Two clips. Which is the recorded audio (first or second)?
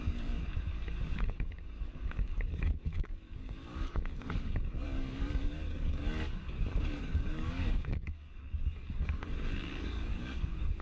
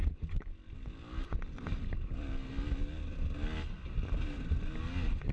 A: second